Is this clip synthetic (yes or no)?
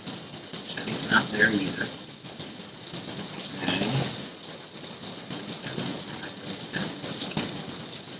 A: no